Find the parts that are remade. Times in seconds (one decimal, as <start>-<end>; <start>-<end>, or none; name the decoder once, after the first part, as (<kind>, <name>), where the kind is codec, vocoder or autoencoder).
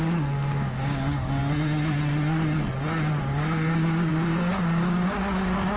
0.0-1.4 (codec, DAC); 3.2-5.8